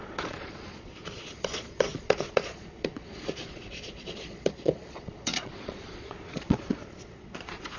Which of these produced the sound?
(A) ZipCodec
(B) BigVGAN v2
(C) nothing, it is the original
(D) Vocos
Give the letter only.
D